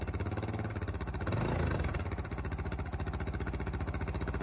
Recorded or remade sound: recorded